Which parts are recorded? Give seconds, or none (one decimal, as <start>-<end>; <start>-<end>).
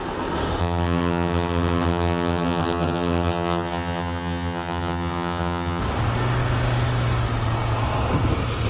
0.0-0.6; 5.8-8.7